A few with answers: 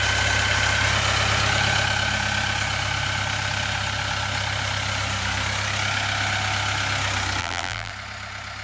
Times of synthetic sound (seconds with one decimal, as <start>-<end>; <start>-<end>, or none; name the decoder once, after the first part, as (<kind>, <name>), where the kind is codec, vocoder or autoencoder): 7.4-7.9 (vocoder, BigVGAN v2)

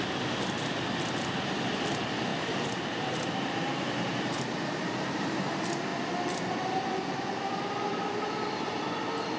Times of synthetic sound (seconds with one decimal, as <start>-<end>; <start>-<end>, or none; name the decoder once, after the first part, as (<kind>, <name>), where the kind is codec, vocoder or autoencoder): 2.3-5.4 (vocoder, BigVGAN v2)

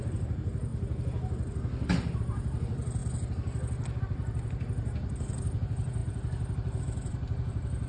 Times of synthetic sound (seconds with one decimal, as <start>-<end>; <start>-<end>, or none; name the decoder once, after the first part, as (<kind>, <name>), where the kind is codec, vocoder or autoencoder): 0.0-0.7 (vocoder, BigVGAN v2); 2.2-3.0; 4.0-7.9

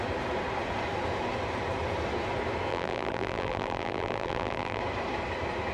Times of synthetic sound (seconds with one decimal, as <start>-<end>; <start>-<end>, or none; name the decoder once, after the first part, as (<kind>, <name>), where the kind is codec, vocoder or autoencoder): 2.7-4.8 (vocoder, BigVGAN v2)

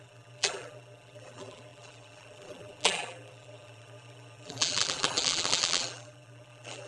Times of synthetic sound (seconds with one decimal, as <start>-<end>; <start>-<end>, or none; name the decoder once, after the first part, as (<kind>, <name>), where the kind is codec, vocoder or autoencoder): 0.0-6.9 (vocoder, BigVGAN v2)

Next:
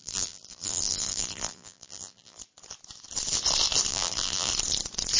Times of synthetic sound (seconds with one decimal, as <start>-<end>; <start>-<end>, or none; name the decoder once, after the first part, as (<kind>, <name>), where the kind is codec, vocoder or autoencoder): 0.0-2.4 (vocoder, BigVGAN v2); 3.9-4.5

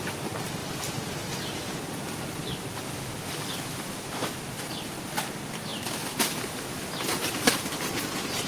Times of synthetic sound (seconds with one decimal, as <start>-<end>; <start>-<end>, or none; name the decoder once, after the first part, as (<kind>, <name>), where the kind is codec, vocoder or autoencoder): 0.6-4.7 (vocoder, BigVGAN v2)